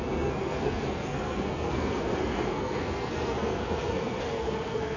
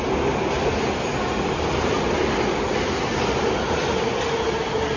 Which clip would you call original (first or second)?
second